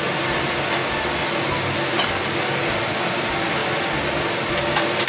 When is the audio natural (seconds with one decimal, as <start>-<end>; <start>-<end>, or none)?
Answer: 0.0-5.1

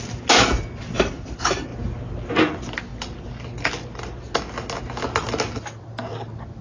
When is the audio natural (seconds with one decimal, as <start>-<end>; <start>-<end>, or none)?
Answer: 0.0-6.6

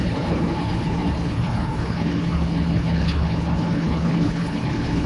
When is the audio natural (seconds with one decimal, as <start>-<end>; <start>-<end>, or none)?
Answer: none

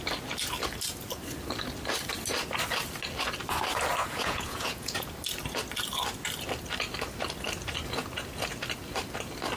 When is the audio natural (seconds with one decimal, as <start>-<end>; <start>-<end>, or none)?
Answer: 0.0-4.0; 5.1-9.6

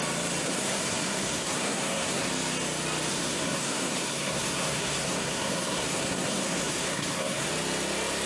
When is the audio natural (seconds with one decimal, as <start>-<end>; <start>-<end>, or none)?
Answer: 0.0-0.4; 2.3-3.1; 7.5-8.3

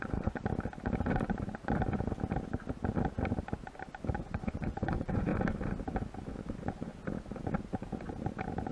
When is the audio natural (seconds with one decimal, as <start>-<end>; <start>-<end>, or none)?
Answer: 0.4-4.2; 5.3-6.3; 6.9-8.7

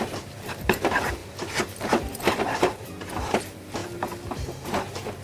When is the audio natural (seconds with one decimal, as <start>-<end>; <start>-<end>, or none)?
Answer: 3.8-4.3

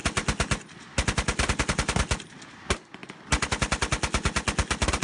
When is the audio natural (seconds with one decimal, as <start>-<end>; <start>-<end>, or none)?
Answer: 0.0-5.0